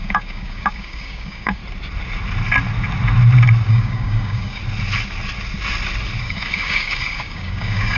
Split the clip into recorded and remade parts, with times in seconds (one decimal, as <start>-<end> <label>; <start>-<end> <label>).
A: 0.0-1.6 remade; 1.6-3.7 recorded; 3.7-4.6 remade; 4.6-6.2 recorded; 6.2-8.0 remade